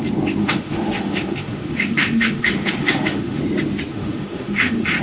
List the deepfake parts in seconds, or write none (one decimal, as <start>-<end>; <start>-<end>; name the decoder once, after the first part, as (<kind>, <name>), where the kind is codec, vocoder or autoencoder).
0.4-3.4 (autoencoder, DAC-VAE); 3.9-5.0

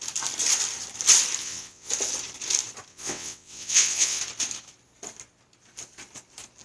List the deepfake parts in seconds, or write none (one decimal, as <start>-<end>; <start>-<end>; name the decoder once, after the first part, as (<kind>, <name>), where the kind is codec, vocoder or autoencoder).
1.4-1.9 (vocoder, WaveNeXt); 2.9-4.2

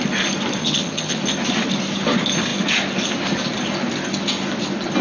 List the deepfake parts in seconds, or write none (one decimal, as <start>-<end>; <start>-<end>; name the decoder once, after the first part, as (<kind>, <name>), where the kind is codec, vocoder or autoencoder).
0.6-1.2 (vocoder, HiFi-GAN)

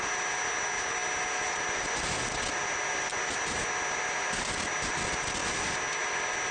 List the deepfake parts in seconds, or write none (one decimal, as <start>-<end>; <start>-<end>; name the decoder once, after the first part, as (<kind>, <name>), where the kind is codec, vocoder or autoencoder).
none

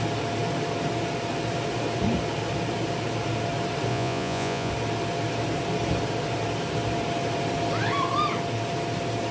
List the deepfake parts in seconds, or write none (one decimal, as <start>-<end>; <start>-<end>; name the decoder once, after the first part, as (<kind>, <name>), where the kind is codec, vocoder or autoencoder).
3.9-4.7 (vocoder, Vocos)

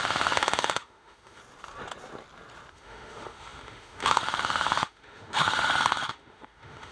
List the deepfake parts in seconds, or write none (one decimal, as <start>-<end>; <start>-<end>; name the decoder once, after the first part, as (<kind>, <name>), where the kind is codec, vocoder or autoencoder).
0.0-1.4 (autoencoder, DAC-VAE); 2.7-6.9

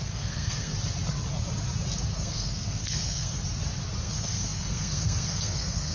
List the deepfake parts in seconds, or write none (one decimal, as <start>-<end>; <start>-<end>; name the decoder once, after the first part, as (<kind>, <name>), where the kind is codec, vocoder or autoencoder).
0.0-0.7 (codec, SNAC); 2.1-3.4; 4.0-5.9

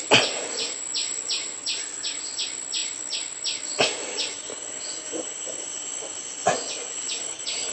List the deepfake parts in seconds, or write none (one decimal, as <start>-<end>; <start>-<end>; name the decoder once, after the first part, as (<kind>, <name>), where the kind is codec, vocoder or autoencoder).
1.6-2.3 (vocoder, WaveNeXt)